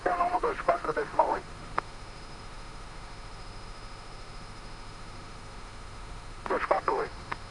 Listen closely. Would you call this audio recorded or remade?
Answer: remade